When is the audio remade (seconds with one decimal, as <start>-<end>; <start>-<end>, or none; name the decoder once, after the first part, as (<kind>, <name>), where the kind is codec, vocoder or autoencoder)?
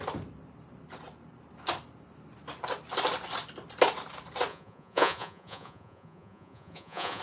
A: 4.5-7.2 (vocoder, Vocos)